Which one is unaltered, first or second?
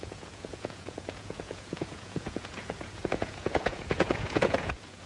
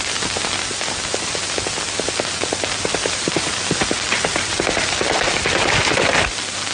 second